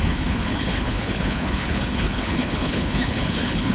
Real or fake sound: fake